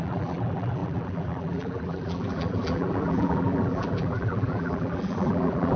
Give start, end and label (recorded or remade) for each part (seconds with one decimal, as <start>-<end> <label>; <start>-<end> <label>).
0.0-5.8 remade